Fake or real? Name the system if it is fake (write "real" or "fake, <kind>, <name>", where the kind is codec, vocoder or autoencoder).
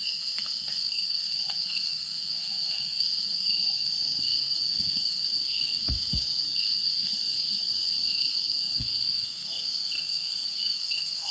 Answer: fake, codec, SNAC